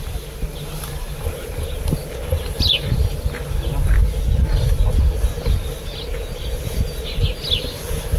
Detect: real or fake real